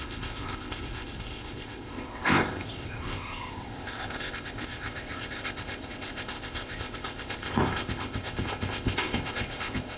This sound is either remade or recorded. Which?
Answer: remade